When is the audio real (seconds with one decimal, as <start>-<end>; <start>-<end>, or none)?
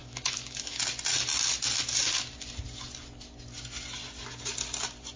0.8-5.2